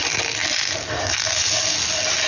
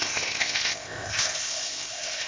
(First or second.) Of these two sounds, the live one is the first